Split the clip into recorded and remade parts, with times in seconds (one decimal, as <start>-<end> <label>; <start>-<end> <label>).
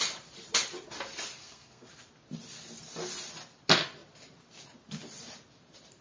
0.0-1.4 recorded; 1.4-1.9 remade; 1.9-6.0 recorded